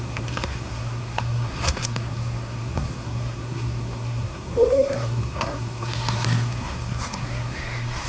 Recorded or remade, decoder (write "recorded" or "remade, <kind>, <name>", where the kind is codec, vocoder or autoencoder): remade, codec, SNAC